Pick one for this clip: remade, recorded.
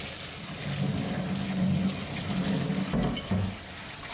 recorded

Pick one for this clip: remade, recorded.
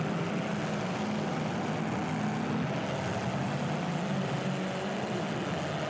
recorded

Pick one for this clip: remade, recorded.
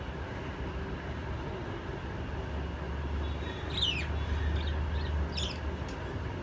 recorded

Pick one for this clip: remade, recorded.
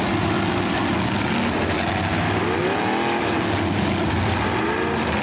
recorded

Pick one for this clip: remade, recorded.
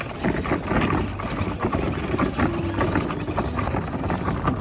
recorded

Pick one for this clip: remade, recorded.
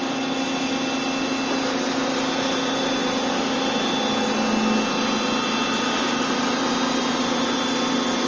recorded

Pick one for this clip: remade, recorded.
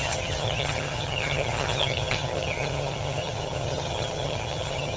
remade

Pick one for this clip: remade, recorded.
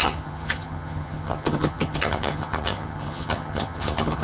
remade